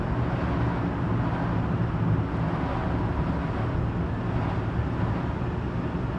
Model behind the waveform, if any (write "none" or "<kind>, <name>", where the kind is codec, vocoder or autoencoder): none